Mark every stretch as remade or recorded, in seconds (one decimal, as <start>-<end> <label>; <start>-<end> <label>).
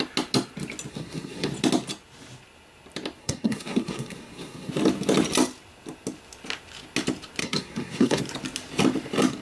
0.0-0.9 recorded; 0.9-1.5 remade; 1.5-3.2 recorded; 3.2-4.7 remade; 4.7-7.4 recorded; 7.4-8.2 remade; 8.2-9.4 recorded